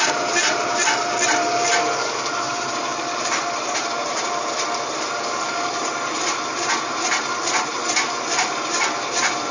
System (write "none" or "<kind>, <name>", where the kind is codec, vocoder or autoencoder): vocoder, BigVGAN v2